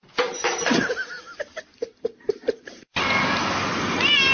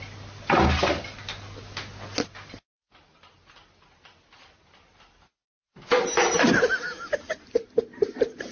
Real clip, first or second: second